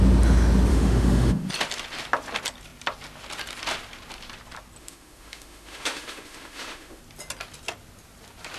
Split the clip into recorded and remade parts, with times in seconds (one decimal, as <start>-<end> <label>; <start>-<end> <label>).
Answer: 0.0-0.7 recorded; 0.7-1.5 remade; 1.5-4.8 recorded; 4.8-7.0 remade; 7.0-8.6 recorded

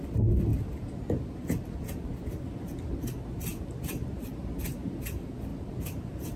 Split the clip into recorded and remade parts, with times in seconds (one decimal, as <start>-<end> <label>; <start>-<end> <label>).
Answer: 0.0-6.4 recorded